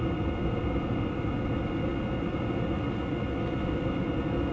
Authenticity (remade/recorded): recorded